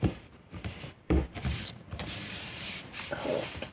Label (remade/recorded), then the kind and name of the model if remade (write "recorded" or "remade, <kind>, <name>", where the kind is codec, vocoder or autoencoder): remade, vocoder, BigVGAN v2